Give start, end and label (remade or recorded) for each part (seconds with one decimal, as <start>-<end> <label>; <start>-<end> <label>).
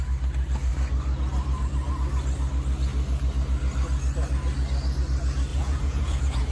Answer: 0.0-5.5 recorded; 5.5-6.5 remade